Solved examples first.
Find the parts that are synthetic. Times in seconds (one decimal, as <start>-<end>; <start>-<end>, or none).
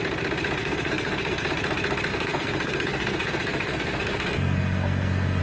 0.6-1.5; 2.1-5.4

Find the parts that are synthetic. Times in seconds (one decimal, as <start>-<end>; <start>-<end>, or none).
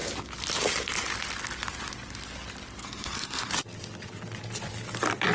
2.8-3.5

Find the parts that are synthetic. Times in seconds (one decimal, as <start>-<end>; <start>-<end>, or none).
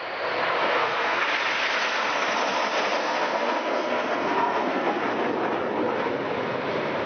0.6-1.2; 3.0-5.0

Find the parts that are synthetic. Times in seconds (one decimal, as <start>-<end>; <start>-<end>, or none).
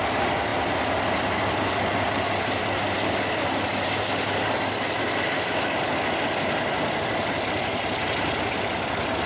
none